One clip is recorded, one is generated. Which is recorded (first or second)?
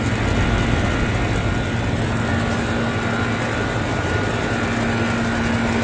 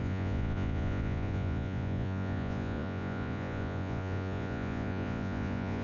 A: first